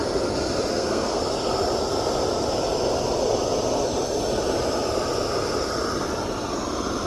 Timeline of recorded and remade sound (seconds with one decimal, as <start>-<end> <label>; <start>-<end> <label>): 0.0-0.7 recorded; 0.7-1.2 remade; 1.2-7.1 recorded